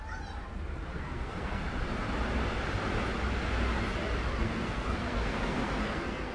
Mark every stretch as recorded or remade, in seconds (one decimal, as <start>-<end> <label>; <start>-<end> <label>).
0.0-0.9 recorded; 0.9-1.6 remade; 1.6-4.3 recorded; 4.3-6.3 remade